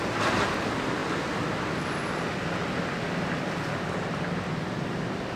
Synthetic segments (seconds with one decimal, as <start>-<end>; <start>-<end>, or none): none